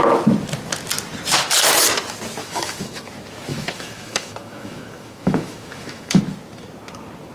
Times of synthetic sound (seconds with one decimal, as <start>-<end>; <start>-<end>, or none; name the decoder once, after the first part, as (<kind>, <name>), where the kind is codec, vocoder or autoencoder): 2.4-3.1 (autoencoder, DAC-VAE); 3.5-6.2